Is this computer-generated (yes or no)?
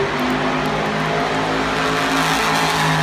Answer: no